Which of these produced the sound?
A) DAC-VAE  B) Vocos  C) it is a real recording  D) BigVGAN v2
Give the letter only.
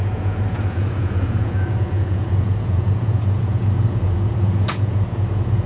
B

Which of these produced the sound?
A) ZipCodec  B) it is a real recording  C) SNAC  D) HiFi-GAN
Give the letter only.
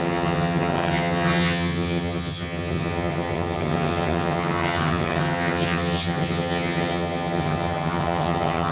D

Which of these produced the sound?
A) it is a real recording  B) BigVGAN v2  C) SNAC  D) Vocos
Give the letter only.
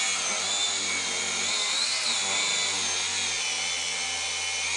A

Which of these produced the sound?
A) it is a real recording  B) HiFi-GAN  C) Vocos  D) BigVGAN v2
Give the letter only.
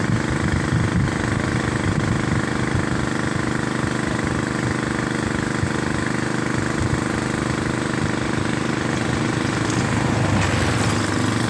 A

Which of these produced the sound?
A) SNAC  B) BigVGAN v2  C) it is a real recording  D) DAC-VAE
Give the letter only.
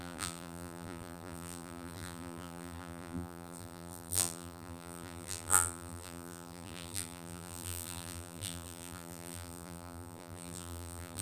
B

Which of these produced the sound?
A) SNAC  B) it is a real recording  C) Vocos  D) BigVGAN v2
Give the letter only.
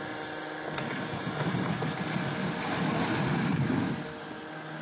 B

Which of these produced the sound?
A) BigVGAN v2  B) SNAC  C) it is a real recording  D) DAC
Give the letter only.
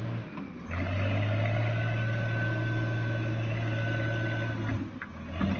C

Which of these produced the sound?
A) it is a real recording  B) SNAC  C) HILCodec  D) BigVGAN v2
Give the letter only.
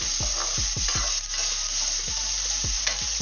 A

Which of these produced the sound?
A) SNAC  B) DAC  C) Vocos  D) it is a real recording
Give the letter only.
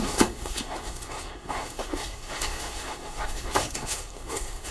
A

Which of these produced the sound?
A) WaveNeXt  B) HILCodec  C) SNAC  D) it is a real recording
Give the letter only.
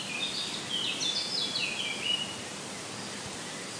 D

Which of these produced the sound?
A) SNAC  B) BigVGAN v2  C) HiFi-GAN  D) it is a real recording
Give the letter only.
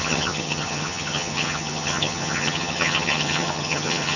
C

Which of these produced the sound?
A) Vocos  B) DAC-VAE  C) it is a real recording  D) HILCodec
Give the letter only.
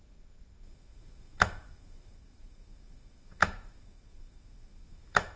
B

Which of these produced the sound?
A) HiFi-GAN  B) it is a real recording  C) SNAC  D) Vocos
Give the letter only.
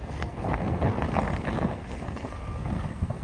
C